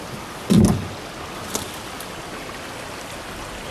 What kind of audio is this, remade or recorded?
recorded